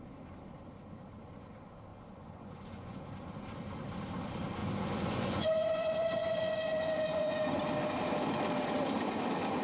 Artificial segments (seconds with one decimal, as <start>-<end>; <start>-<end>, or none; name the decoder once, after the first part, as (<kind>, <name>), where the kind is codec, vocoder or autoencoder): 1.9-3.0 (vocoder, Vocos); 4.6-7.6